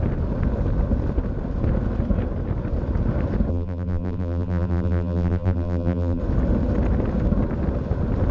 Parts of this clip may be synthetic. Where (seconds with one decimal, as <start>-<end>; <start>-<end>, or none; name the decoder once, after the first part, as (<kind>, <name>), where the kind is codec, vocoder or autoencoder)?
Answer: 3.5-6.2 (vocoder, BigVGAN v2)